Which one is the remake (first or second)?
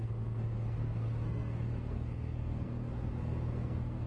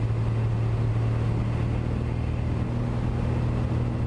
first